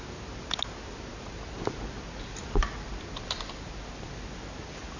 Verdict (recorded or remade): recorded